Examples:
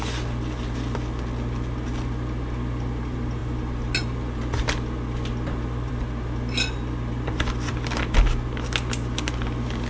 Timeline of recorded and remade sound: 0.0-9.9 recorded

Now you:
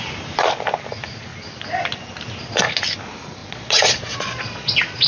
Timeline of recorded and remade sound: 0.0-3.4 recorded; 3.4-5.1 remade

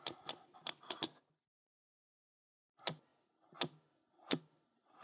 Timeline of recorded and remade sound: 0.0-5.0 recorded

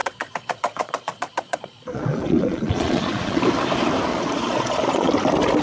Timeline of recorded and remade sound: 0.0-3.4 remade; 3.4-4.1 recorded; 4.1-5.1 remade; 5.1-5.6 recorded